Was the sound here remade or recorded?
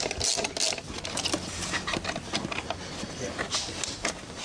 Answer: recorded